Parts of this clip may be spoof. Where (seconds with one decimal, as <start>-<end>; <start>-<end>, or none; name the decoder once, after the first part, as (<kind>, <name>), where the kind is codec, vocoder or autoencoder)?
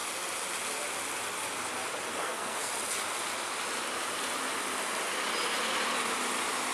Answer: 2.1-2.7 (codec, SNAC)